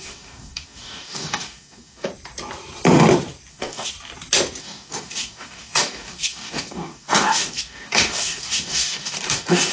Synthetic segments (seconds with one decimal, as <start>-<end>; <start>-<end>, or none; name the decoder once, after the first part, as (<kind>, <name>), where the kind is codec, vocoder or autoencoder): 0.0-2.1 (codec, DAC); 3.5-3.9; 4.6-9.7